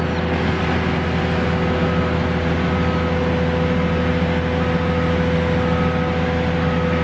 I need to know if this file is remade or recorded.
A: recorded